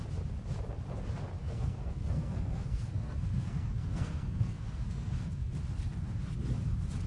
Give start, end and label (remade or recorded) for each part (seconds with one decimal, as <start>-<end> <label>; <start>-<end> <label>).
0.0-1.4 recorded; 1.4-5.5 remade; 5.5-7.1 recorded